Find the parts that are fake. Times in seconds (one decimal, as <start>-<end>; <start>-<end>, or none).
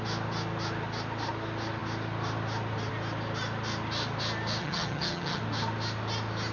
4.6-5.4